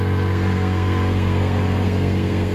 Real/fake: fake